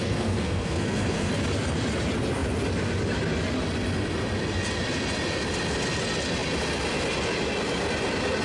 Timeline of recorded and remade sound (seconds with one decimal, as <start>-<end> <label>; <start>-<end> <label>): 0.0-1.3 remade; 1.3-8.4 recorded